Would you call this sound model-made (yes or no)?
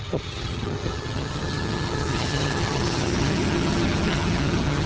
yes